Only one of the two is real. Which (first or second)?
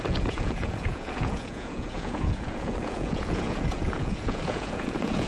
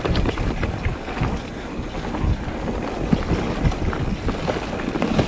second